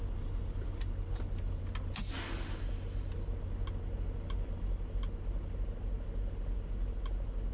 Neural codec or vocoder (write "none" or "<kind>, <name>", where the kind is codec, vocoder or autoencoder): none